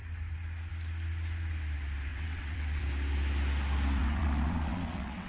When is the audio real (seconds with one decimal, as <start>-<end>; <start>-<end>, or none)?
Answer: 0.0-2.1; 2.8-4.0